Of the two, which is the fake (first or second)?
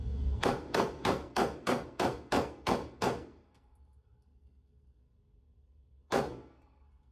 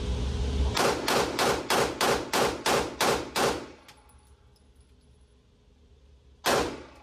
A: first